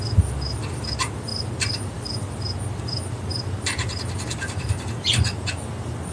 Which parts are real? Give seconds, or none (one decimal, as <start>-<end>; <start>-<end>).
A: 0.0-6.1